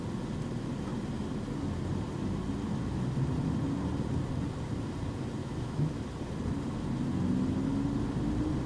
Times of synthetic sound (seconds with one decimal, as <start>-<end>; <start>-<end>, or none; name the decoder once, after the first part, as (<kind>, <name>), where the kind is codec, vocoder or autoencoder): 5.4-6.0 (autoencoder, DAC-VAE)